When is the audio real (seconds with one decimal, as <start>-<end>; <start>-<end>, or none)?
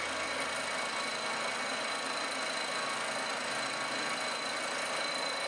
0.0-5.5